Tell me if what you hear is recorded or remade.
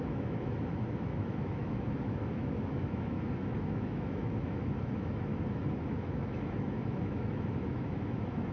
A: remade